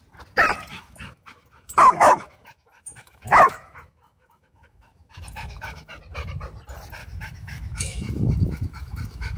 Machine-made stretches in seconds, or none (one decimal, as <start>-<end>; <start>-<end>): 0.7-5.9; 7.0-9.4